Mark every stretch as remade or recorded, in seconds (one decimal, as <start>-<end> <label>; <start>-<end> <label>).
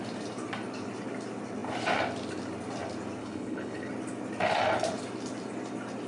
0.0-3.2 recorded; 3.2-3.9 remade; 3.9-6.1 recorded